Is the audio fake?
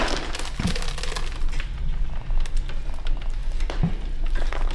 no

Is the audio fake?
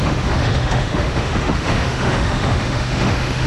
yes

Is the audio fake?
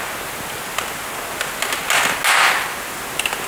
no